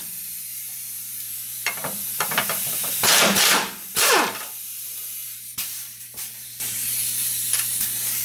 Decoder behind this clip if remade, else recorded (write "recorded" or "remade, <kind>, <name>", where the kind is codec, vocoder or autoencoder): remade, vocoder, BigVGAN v2